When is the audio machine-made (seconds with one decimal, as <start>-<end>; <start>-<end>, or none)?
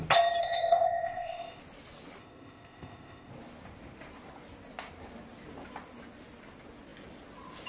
0.4-1.6; 2.2-3.3